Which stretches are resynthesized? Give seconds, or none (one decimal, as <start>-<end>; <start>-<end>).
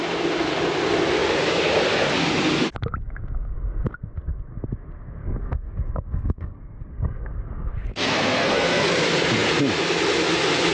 5.2-8.9